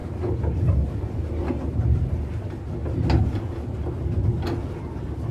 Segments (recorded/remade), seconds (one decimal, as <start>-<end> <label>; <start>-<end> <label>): 0.0-5.3 recorded